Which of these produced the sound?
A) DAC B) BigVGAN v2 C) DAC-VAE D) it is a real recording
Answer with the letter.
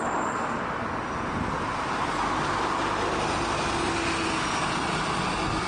D